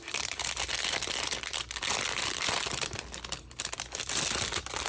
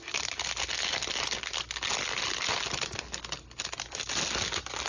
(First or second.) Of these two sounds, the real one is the second